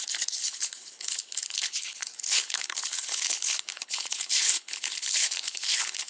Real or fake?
fake